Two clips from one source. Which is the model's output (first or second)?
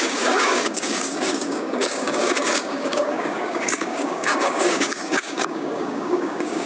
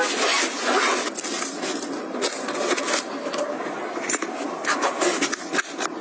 first